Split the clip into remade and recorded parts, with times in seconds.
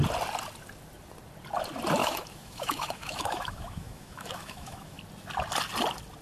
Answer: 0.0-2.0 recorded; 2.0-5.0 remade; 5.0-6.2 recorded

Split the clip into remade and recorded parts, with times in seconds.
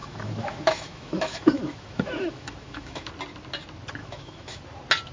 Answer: 0.0-3.1 remade; 3.1-4.0 recorded; 4.0-4.6 remade; 4.6-5.1 recorded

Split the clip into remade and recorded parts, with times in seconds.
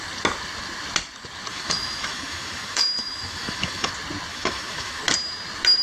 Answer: 0.0-1.5 recorded; 1.5-3.9 remade; 3.9-4.3 recorded; 4.3-5.0 remade; 5.0-5.8 recorded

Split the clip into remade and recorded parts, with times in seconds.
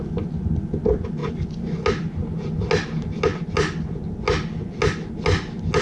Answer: 0.0-5.8 recorded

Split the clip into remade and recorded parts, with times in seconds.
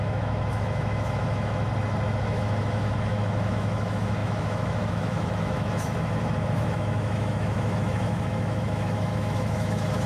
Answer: 0.0-1.7 remade; 1.7-2.2 recorded; 2.2-10.1 remade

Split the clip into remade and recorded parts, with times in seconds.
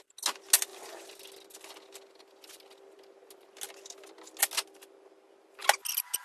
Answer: 0.0-6.2 recorded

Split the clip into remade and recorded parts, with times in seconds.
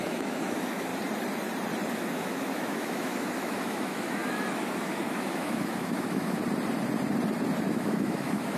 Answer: 0.0-0.9 remade; 0.9-1.9 recorded; 1.9-6.4 remade; 6.4-7.7 recorded; 7.7-8.6 remade